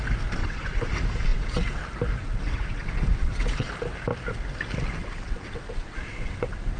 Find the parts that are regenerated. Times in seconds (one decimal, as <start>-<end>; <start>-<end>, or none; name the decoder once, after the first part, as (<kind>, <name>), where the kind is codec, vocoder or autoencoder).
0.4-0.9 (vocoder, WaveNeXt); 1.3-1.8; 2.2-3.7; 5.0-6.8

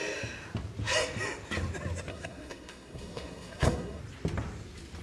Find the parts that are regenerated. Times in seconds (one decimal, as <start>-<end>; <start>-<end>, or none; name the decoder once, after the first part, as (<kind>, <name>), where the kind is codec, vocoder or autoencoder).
2.1-4.0 (codec, SNAC)

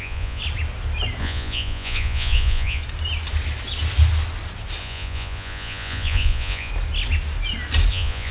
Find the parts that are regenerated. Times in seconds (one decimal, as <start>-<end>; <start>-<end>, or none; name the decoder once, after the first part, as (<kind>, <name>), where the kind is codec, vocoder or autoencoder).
0.0-0.4 (vocoder, Vocos); 1.2-2.8; 4.8-6.7; 7.9-8.3

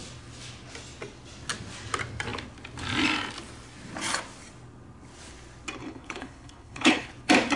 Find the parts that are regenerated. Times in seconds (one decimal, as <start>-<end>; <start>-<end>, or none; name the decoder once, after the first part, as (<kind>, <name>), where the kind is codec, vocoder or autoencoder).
5.8-7.1 (codec, HILCodec)

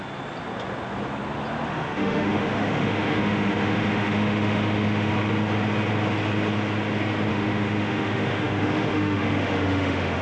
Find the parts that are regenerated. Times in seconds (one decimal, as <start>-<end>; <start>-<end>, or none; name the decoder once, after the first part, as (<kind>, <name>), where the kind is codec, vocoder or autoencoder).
1.7-5.1 (autoencoder, DAC-VAE); 7.3-10.2

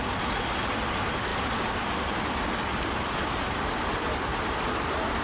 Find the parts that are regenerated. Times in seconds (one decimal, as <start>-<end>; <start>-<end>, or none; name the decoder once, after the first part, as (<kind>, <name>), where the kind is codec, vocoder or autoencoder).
none

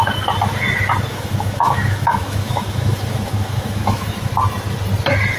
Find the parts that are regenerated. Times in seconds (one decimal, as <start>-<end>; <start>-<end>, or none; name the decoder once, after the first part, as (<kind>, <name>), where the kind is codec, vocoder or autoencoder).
1.1-4.3 (autoencoder, DAC-VAE)